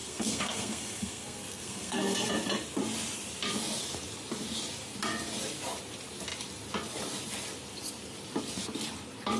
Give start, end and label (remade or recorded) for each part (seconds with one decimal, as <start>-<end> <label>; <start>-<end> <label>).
0.0-2.3 remade; 2.3-9.4 recorded